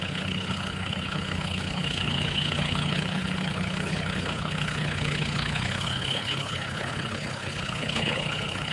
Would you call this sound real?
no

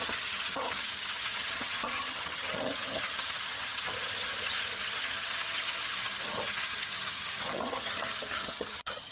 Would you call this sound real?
no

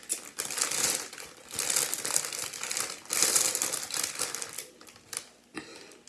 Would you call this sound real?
yes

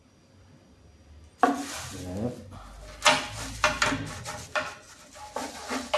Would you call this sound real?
yes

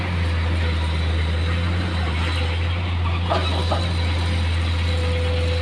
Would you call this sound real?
yes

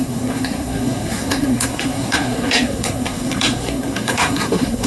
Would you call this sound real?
no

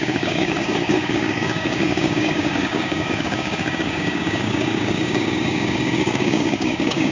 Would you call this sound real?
no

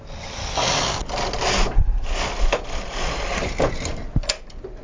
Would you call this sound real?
yes